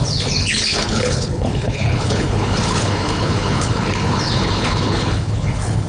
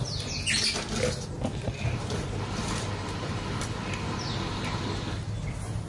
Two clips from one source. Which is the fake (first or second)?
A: first